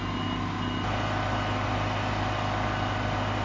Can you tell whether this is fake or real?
real